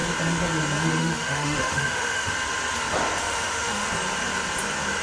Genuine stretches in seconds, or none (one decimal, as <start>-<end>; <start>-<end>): 0.0-1.0; 2.3-3.2; 3.9-5.0